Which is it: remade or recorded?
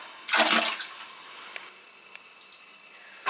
recorded